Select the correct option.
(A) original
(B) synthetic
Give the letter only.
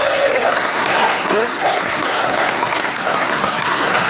B